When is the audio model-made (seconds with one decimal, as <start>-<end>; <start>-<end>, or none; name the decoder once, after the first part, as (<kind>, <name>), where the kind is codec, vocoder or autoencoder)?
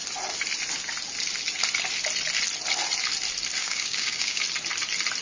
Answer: 3.6-4.4 (codec, DAC)